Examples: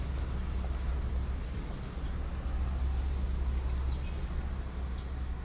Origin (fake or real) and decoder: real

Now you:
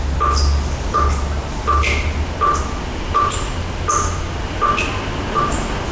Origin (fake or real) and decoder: real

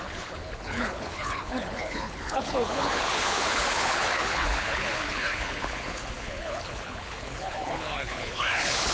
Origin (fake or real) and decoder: fake, codec, HILCodec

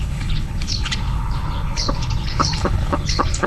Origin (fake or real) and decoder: fake, codec, HILCodec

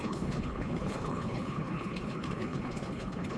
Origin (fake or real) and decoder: fake, codec, HILCodec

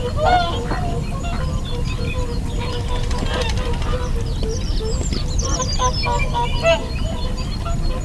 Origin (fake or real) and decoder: real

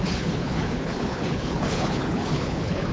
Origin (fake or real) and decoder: fake, codec, HILCodec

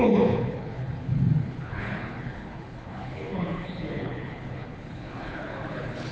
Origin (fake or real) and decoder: fake, codec, HILCodec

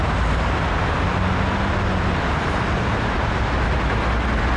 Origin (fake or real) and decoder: real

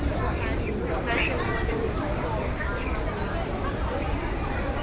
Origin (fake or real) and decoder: real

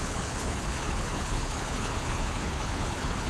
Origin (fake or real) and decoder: fake, codec, HILCodec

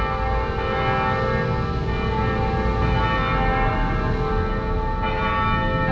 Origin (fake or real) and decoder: real